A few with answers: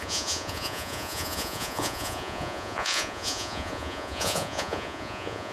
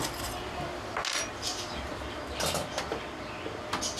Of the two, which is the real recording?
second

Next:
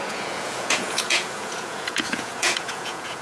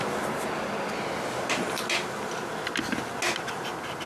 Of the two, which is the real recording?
second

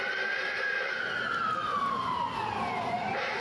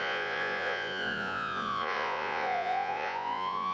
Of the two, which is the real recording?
first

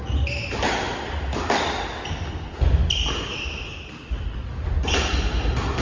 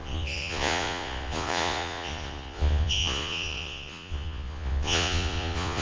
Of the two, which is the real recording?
first